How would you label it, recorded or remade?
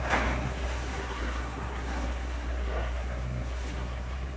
remade